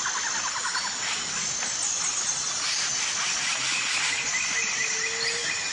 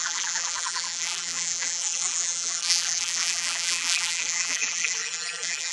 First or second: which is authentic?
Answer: first